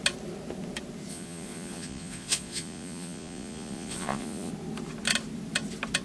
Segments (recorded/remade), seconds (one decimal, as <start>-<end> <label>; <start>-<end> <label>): 0.0-1.1 recorded; 1.1-4.5 remade; 4.5-6.0 recorded